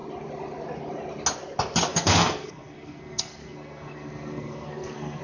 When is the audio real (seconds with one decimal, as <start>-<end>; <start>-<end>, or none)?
0.0-1.9